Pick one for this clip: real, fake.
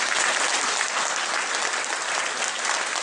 real